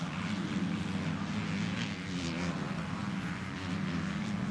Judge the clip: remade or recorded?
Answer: recorded